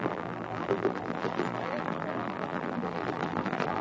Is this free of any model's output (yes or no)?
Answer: no